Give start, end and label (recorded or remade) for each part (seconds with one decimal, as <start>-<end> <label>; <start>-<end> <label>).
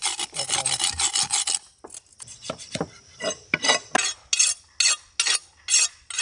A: 0.0-0.7 remade; 0.7-2.3 recorded; 2.3-3.8 remade; 3.8-6.2 recorded